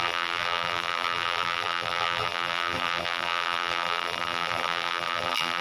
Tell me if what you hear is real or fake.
fake